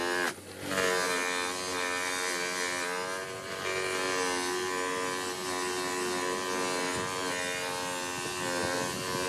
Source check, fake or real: real